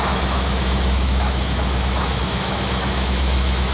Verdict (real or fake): fake